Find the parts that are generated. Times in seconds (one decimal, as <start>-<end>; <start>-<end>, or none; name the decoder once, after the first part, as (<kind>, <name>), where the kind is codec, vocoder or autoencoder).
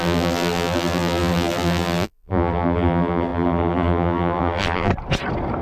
0.0-4.9 (vocoder, BigVGAN v2)